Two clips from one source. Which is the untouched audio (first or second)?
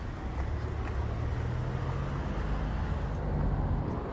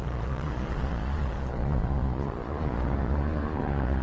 first